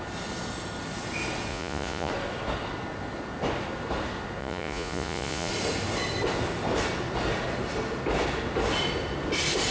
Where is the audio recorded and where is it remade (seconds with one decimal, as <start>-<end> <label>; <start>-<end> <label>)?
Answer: 0.0-1.5 recorded; 1.5-2.1 remade; 2.1-4.4 recorded; 4.4-5.5 remade; 5.5-9.7 recorded